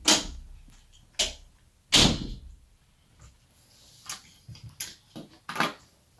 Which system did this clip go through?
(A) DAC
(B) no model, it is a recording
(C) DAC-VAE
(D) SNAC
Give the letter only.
B